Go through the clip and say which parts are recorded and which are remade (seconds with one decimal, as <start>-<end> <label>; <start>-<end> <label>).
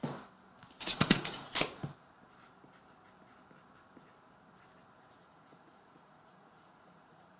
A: 0.0-0.8 recorded; 0.8-1.5 remade; 1.5-5.2 recorded; 5.2-7.4 remade